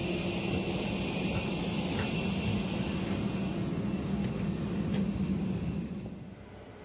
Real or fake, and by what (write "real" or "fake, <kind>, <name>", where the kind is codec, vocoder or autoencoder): real